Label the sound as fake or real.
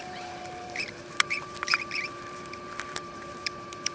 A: fake